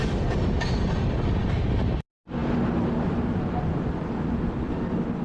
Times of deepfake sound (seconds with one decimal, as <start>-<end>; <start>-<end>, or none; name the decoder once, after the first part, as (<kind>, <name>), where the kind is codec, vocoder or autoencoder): none